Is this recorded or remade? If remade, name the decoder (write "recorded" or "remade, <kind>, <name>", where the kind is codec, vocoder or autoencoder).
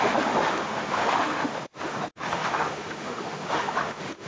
remade, autoencoder, DAC-VAE